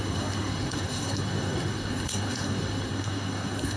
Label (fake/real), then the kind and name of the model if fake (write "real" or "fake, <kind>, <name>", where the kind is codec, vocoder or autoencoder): fake, codec, SNAC